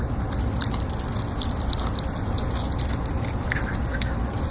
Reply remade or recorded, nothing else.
recorded